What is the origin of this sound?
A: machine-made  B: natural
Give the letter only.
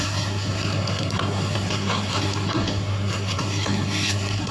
A